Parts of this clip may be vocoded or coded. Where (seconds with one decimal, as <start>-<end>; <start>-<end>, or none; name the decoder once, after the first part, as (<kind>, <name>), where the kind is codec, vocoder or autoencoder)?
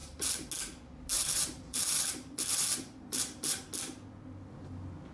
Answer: 0.0-0.5 (vocoder, BigVGAN v2); 1.1-3.6